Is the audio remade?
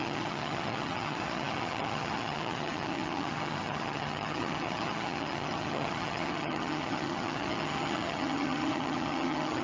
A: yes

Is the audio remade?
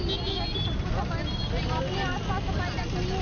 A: no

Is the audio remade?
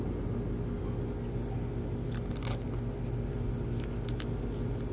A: no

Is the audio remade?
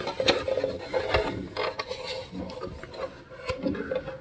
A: no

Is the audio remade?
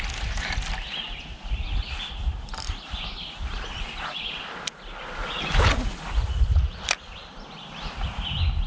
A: no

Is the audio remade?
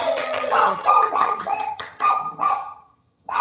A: yes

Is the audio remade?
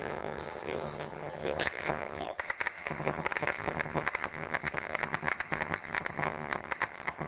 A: yes